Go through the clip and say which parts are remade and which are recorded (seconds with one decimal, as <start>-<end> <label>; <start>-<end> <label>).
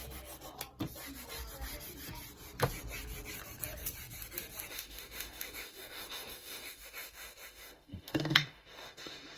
0.0-4.7 recorded; 4.7-9.4 remade